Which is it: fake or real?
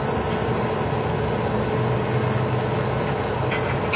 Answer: real